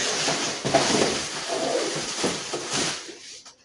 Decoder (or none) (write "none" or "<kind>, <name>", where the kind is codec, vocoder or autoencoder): vocoder, BigVGAN v2